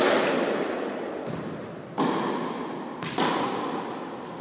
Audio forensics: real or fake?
real